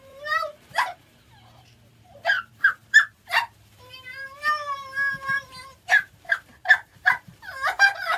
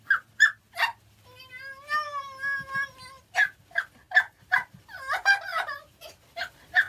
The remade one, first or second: first